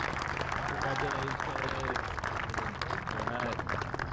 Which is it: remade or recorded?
recorded